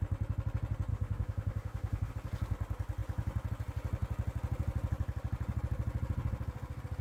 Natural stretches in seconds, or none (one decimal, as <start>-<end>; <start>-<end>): 0.0-0.9; 2.1-7.0